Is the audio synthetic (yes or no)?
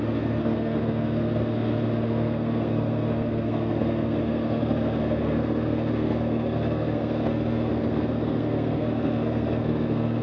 yes